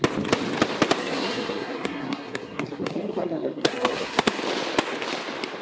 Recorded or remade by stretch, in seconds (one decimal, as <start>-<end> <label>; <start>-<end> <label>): 0.0-1.0 recorded; 1.0-4.4 remade; 4.4-5.6 recorded

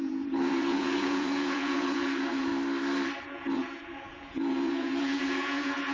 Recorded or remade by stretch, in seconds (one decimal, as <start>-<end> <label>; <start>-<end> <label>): 0.0-2.5 remade; 2.5-3.2 recorded; 3.2-5.9 remade

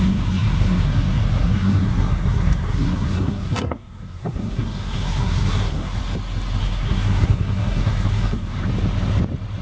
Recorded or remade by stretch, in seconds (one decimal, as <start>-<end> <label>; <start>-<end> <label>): 0.0-6.0 remade; 6.0-6.6 recorded; 6.6-8.6 remade; 8.6-9.6 recorded